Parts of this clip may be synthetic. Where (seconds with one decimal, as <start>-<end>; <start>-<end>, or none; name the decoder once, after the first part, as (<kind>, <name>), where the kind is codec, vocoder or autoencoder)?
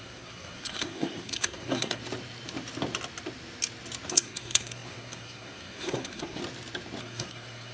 0.0-2.0 (codec, SNAC); 4.1-6.4; 7.0-7.7